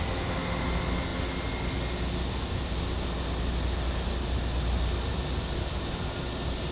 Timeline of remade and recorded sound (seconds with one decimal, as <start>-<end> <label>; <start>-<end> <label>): 0.0-6.7 recorded